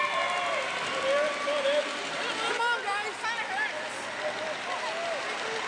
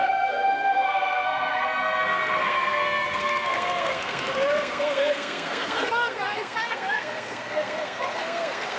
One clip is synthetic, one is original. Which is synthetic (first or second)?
second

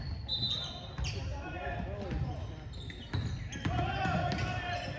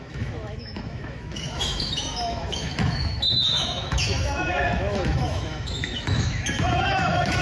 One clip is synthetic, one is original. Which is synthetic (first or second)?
second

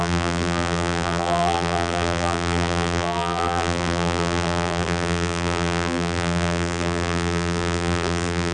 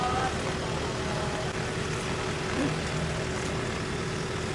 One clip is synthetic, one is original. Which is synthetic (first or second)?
first